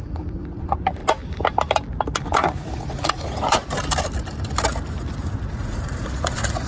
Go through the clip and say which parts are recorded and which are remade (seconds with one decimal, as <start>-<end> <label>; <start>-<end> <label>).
0.0-1.0 remade; 1.0-2.3 recorded; 2.3-3.6 remade; 3.6-5.5 recorded; 5.5-6.7 remade